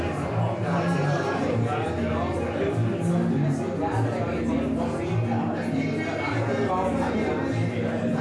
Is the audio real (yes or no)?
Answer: yes